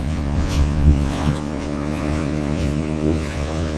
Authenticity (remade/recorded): remade